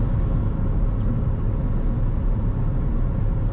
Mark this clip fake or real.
real